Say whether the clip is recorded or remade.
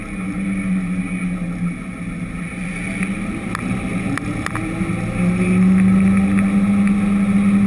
recorded